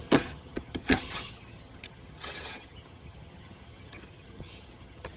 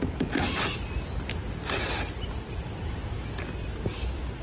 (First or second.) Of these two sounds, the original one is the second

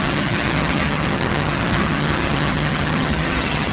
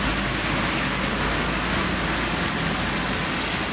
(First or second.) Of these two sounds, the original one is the second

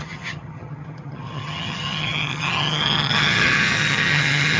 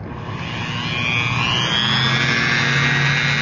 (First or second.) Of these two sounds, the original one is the second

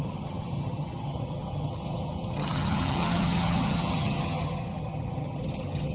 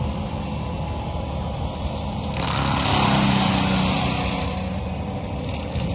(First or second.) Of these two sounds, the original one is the second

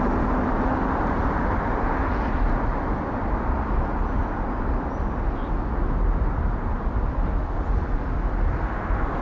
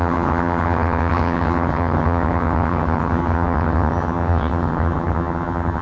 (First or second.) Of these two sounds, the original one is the first